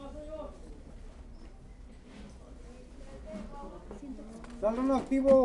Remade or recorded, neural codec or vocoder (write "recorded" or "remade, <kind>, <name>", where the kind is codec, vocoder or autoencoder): recorded